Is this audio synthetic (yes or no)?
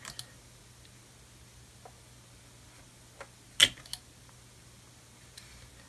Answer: no